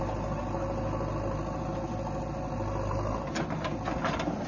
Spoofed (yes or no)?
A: no